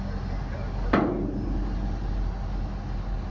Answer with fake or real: real